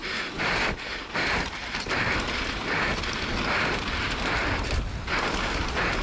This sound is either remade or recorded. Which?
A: recorded